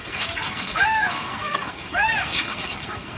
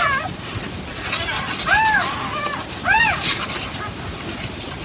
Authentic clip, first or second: second